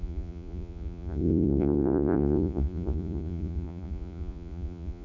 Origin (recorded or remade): remade